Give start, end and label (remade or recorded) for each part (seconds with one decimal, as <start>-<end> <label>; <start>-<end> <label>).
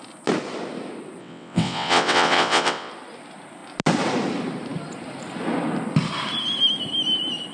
0.0-1.2 recorded; 1.2-2.9 remade; 2.9-7.5 recorded